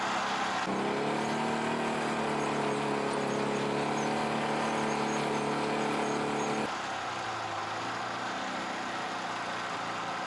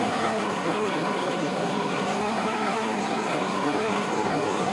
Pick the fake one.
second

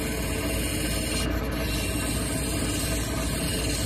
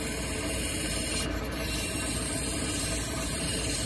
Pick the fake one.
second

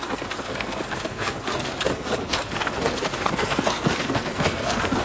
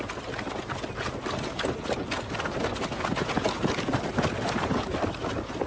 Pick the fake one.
first